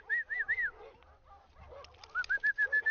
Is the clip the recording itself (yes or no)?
yes